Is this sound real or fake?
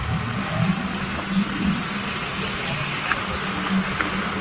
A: real